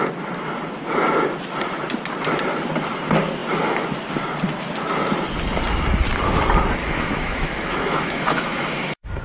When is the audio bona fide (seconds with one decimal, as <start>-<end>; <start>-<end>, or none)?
0.0-6.8